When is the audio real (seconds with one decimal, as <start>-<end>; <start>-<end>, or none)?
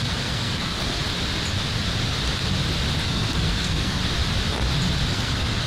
1.0-3.0; 4.0-5.1